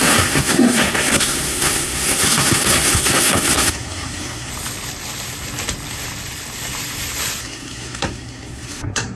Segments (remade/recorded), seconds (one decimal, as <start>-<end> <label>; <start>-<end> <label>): 0.0-4.5 remade; 4.5-7.4 recorded; 7.4-9.2 remade